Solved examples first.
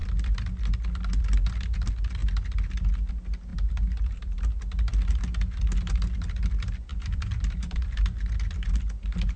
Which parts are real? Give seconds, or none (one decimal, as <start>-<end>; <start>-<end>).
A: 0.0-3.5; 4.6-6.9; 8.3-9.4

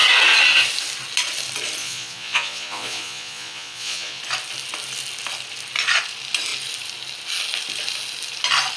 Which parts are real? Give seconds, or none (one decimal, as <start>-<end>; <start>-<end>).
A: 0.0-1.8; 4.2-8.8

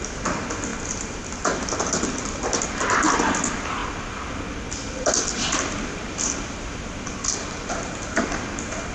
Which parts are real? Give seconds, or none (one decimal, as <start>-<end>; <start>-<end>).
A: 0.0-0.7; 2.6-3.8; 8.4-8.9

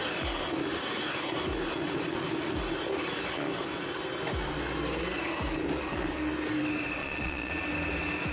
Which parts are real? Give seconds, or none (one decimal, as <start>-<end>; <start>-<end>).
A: 0.0-7.0; 7.5-8.3